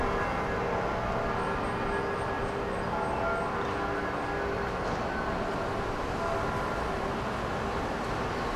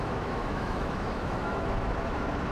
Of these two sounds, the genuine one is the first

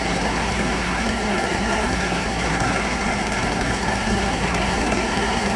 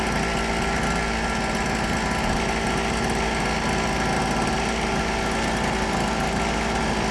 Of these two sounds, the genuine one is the second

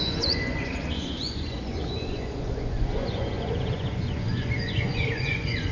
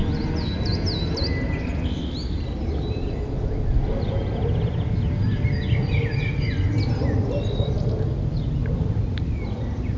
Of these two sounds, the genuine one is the second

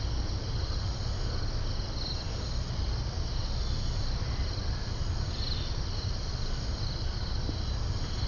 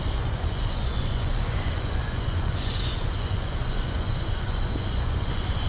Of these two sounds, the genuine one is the first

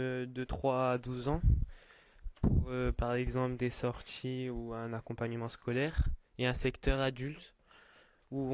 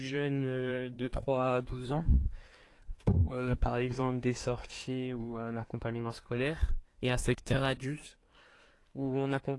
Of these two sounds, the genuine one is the first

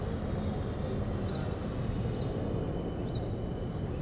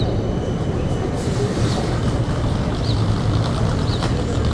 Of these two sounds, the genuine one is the first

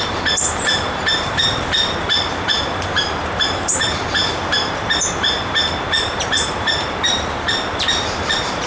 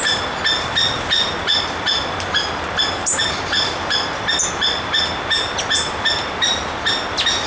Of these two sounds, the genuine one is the second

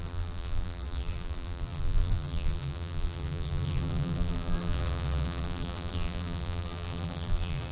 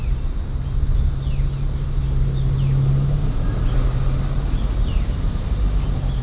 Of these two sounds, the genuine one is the second